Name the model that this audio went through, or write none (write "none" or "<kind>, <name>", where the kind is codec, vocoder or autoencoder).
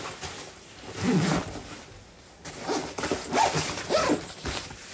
none